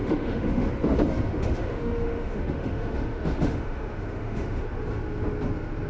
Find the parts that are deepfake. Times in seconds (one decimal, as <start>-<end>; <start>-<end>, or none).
0.0-0.7; 1.1-4.6